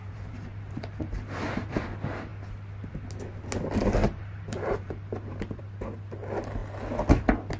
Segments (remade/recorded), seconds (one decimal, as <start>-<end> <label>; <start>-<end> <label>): 0.0-1.8 remade; 1.8-4.0 recorded; 4.0-5.6 remade; 5.6-7.6 recorded